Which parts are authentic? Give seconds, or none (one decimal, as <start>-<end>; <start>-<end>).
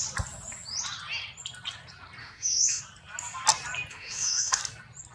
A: 0.0-2.2; 2.8-3.9; 4.6-5.1